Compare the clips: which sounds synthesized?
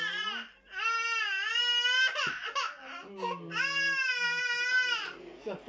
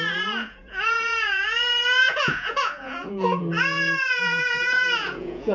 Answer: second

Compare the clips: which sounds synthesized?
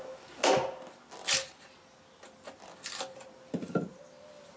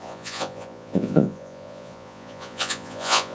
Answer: second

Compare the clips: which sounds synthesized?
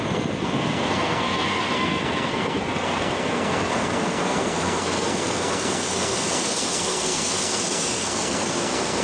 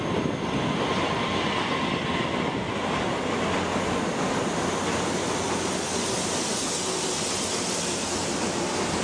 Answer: first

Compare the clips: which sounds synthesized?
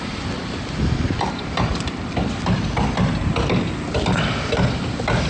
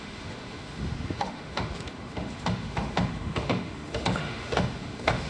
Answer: second